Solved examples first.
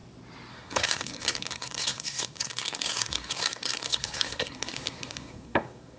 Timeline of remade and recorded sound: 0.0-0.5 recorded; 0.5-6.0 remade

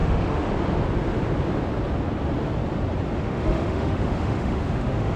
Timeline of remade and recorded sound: 0.0-0.5 remade; 0.5-3.2 recorded; 3.2-5.2 remade

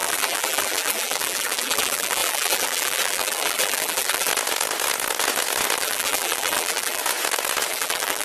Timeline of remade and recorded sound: 0.0-4.3 remade; 4.3-5.8 recorded; 5.8-7.0 remade; 7.0-7.7 recorded; 7.7-8.2 remade

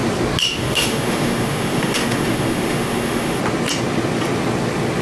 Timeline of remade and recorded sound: 0.0-0.4 recorded; 0.4-3.4 remade; 3.4-5.0 recorded

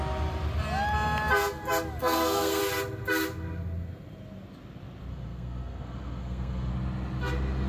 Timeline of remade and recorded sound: 0.0-2.0 recorded; 2.0-2.6 remade; 2.6-5.1 recorded; 5.1-6.7 remade; 6.7-7.7 recorded